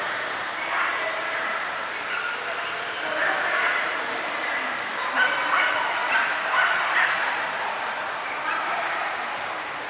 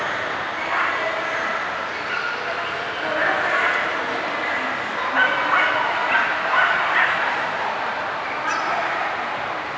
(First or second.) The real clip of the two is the second